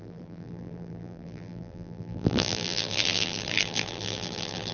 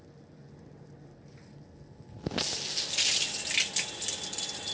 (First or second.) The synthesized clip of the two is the first